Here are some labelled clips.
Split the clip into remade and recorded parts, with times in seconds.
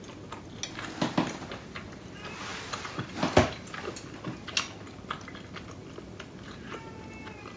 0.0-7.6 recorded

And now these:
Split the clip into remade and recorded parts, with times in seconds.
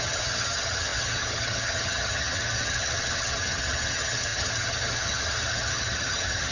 0.0-6.5 remade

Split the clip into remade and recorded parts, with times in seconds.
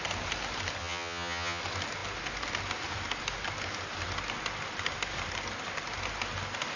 0.0-0.8 recorded; 0.8-1.6 remade; 1.6-6.8 recorded